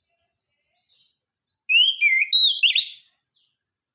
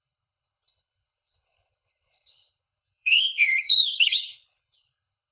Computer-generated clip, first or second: second